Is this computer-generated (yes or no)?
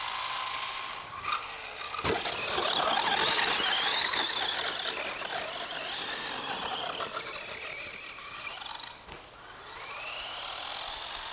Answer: no